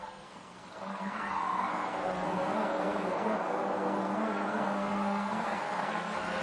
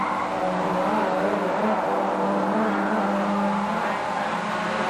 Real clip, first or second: second